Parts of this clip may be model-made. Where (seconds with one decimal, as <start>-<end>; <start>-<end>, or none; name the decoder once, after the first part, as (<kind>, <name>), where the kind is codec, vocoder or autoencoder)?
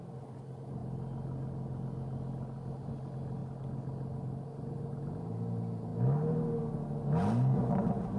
none